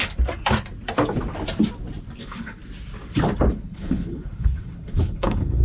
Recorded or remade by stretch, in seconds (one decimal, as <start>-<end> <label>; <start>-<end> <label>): 0.0-2.2 recorded; 2.2-2.6 remade; 2.6-3.5 recorded; 3.5-5.6 remade